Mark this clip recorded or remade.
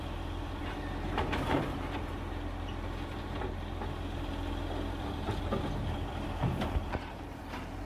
remade